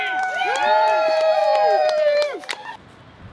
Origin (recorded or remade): remade